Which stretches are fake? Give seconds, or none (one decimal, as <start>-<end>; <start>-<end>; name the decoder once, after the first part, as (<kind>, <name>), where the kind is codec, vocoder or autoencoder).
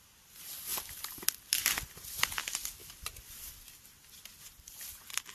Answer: none